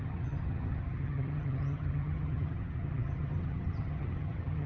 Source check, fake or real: fake